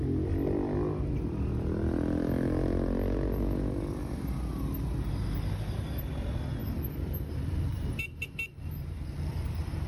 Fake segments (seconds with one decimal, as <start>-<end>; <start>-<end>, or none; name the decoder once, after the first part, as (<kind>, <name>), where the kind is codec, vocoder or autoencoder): 6.6-9.4 (vocoder, BigVGAN v2)